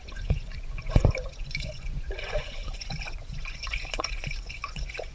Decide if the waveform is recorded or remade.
remade